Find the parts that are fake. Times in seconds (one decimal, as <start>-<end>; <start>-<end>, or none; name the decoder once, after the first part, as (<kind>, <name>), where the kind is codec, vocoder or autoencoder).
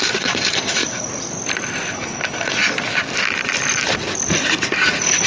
0.8-1.3 (vocoder, BigVGAN v2)